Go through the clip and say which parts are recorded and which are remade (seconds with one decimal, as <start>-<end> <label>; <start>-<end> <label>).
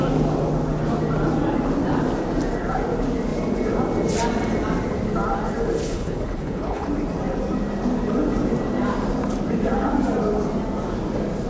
0.0-5.8 recorded; 5.8-6.9 remade; 6.9-11.5 recorded